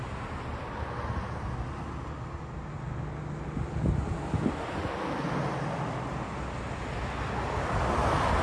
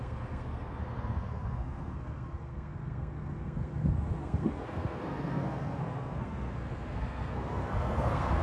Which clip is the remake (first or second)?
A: second